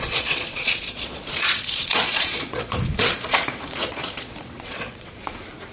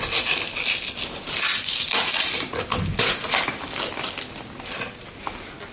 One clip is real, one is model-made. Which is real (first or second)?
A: second